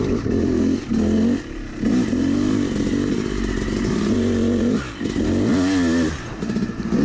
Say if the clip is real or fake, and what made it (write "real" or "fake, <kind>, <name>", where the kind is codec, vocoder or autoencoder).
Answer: real